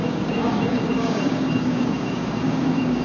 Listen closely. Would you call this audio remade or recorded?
remade